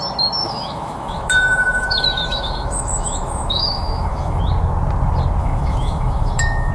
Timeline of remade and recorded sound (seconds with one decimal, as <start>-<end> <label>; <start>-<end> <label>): 0.0-0.4 recorded; 0.4-4.4 remade; 4.4-5.4 recorded; 5.4-6.7 remade